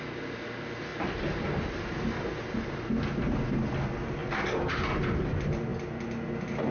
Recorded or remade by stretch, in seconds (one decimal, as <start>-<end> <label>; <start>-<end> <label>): 0.0-6.7 recorded